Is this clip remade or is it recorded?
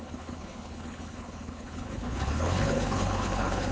remade